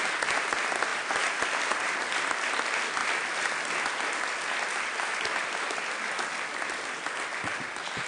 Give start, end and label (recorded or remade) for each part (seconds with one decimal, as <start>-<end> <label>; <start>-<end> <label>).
0.0-8.1 recorded